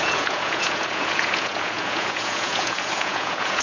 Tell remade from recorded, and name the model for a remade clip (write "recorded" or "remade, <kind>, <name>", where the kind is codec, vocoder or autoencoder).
remade, vocoder, Vocos